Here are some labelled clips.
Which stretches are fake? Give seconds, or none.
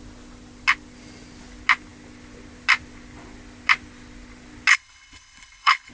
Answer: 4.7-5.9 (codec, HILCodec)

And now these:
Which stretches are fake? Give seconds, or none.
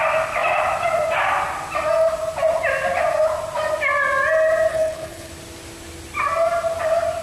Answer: 4.7-5.3 (codec, HILCodec)